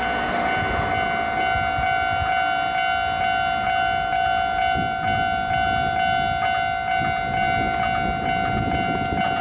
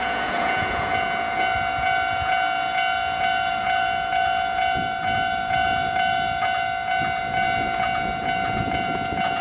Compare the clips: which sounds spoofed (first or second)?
second